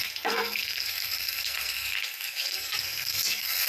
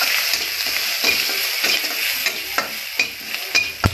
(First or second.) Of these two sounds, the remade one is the first